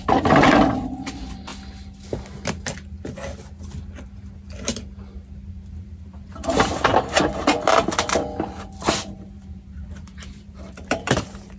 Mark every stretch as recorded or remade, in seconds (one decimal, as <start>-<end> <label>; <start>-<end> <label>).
0.0-1.5 remade; 1.5-5.5 recorded; 5.5-6.9 remade; 6.9-8.9 recorded; 8.9-11.6 remade